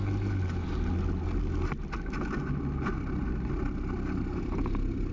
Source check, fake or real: real